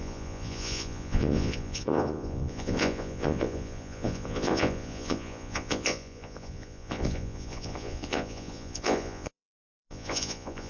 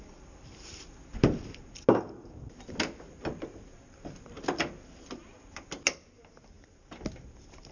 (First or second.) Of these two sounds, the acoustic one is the second